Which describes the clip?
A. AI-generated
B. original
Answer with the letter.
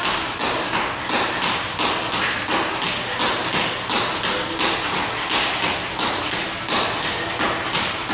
B